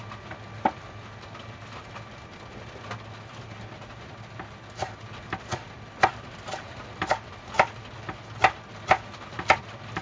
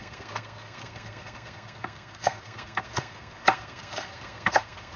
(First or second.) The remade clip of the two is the second